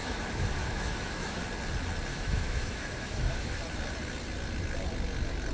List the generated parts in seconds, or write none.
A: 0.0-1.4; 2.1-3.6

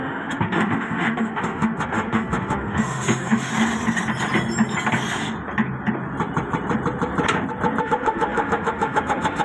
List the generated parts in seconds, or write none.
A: 0.0-3.5; 7.8-9.4

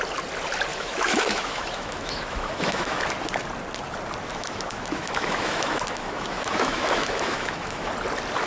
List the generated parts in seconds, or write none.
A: 0.7-3.0; 4.3-7.9

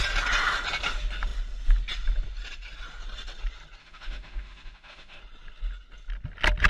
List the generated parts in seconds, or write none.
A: 3.8-5.2

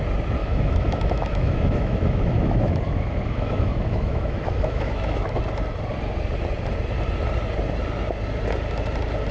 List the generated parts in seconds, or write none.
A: 0.4-5.4